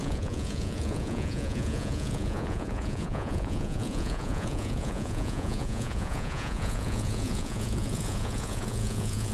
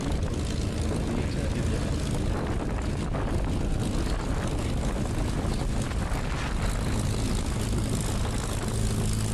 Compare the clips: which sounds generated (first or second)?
first